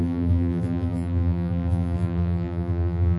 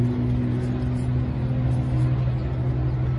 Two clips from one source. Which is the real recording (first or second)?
second